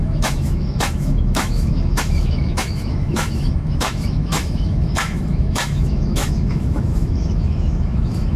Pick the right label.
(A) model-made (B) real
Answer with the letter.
A